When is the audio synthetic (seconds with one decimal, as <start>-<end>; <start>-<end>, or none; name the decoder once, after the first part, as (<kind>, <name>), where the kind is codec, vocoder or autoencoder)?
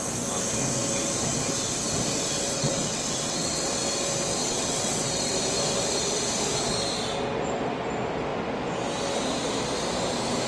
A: 2.5-3.7 (vocoder, WaveNeXt); 4.4-5.3